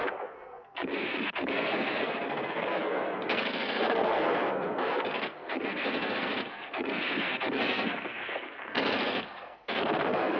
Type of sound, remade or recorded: remade